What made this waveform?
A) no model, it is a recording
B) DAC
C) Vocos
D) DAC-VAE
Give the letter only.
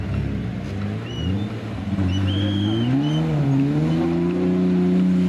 A